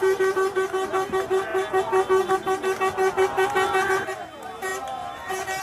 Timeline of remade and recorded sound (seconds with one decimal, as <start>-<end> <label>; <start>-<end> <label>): 0.0-5.6 recorded